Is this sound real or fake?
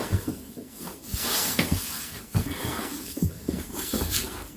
fake